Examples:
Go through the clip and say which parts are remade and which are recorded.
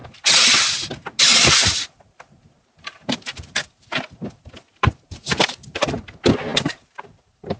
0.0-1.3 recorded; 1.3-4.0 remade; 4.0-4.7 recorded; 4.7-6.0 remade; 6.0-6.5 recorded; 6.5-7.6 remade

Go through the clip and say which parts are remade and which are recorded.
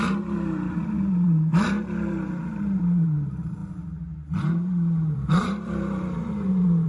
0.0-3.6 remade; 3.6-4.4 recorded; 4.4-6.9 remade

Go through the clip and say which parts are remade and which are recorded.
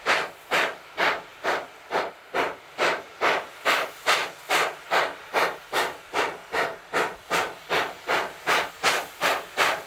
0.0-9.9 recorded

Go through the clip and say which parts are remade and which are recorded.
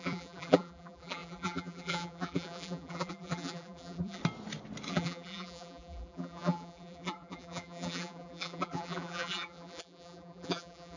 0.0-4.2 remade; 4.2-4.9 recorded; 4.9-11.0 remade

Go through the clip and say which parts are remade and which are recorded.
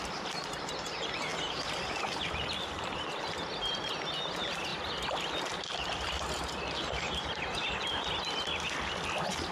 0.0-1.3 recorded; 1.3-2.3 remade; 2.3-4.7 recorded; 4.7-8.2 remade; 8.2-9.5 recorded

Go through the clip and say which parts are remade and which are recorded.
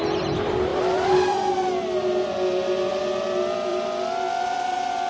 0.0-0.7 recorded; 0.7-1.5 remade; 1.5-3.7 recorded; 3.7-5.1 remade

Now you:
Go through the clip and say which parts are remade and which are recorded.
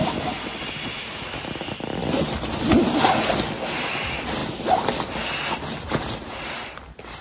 0.0-1.3 recorded; 1.3-2.0 remade; 2.0-3.9 recorded; 3.9-4.4 remade; 4.4-5.9 recorded; 5.9-7.2 remade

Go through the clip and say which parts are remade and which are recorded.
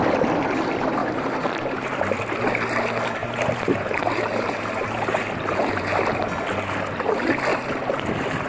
0.0-1.0 recorded; 1.0-1.6 remade; 1.6-3.2 recorded; 3.2-6.3 remade; 6.3-7.5 recorded; 7.5-8.5 remade